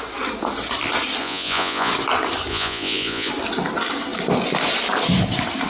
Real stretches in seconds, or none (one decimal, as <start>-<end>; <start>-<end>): 0.0-1.2; 1.9-2.5; 3.3-5.7